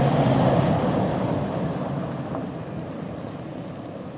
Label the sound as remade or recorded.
remade